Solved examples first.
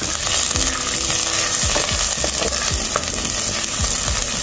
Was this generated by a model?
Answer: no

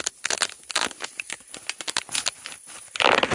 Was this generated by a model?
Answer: no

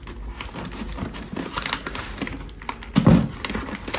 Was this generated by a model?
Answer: no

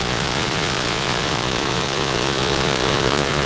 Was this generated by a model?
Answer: yes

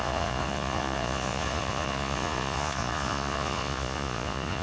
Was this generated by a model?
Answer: yes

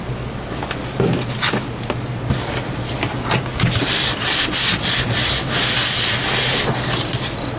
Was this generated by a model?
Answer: no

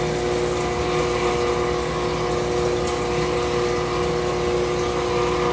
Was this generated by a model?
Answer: no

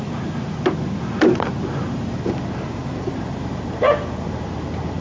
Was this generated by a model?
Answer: no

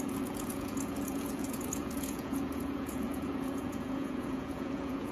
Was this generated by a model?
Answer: yes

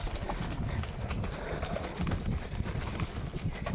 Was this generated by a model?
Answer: no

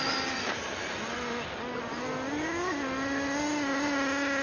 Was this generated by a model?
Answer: no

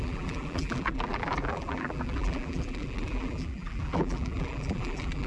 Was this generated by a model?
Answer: yes